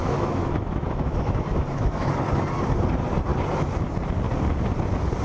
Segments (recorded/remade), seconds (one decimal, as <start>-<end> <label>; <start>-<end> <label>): 0.0-2.1 remade; 2.1-5.2 recorded